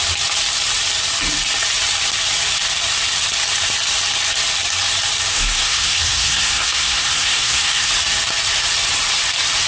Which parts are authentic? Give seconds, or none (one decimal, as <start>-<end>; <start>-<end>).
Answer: 0.0-5.3; 7.9-9.7